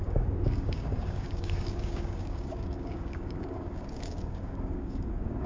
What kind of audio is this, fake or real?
fake